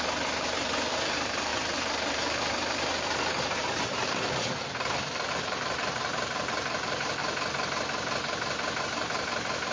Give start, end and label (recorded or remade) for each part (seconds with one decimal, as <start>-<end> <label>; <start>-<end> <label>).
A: 0.0-7.2 remade; 7.2-8.8 recorded; 8.8-9.7 remade